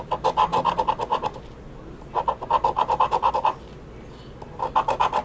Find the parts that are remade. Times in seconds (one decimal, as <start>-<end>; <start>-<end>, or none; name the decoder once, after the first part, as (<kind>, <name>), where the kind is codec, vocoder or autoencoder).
none